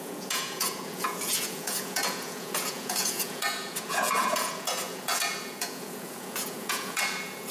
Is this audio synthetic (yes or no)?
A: yes